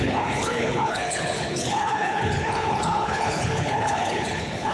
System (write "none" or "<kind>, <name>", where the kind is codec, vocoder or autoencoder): codec, HILCodec